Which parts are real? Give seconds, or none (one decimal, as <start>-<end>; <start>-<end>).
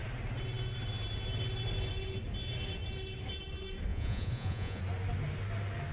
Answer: 0.0-3.9; 4.8-5.9